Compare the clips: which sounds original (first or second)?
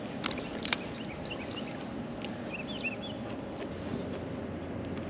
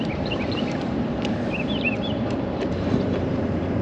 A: first